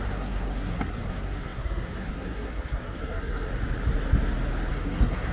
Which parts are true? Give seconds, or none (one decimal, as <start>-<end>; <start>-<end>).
3.5-4.7